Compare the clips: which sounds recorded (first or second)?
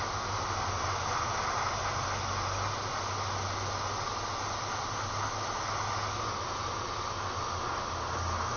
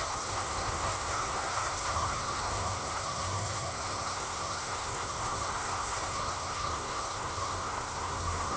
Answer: first